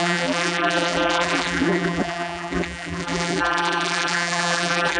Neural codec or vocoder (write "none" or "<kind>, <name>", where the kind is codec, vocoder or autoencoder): vocoder, BigVGAN v2